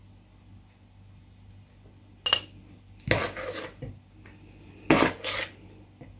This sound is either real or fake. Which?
real